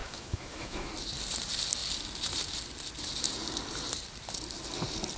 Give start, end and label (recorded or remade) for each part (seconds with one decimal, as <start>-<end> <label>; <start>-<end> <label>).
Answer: 0.0-0.9 remade; 0.9-5.2 recorded